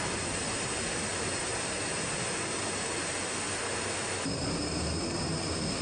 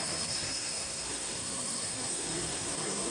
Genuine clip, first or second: first